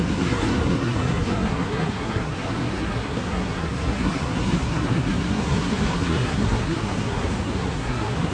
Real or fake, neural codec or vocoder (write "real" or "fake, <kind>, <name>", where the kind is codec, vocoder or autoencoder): fake, codec, SNAC